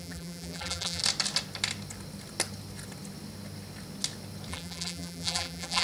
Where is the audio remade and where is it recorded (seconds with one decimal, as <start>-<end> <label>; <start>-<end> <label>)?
0.0-1.0 remade; 1.0-4.5 recorded; 4.5-5.8 remade